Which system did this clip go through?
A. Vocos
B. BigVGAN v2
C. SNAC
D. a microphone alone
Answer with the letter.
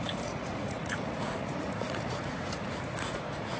A